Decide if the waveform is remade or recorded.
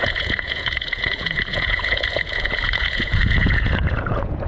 remade